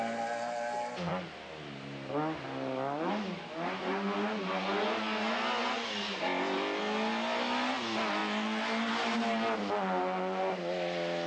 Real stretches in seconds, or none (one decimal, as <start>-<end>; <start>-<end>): 0.0-11.3